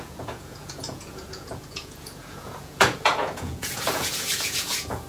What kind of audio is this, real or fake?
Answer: fake